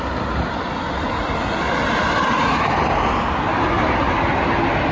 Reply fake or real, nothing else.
real